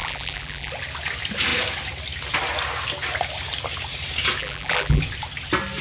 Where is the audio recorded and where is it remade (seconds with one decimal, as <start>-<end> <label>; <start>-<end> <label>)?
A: 0.0-0.7 remade; 0.7-4.4 recorded; 4.4-5.0 remade; 5.0-5.8 recorded